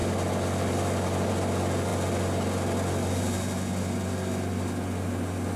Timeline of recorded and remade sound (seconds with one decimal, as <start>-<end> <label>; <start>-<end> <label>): 0.0-5.6 recorded